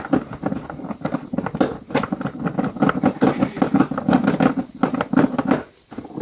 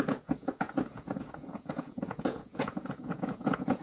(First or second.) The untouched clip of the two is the first